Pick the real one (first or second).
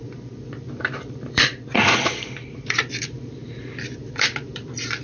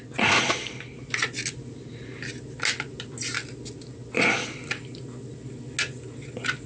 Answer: second